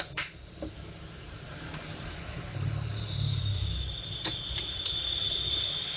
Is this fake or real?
fake